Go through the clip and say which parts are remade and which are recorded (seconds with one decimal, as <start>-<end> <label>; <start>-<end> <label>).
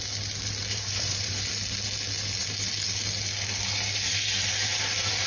0.0-0.7 recorded; 0.7-1.4 remade; 1.4-5.3 recorded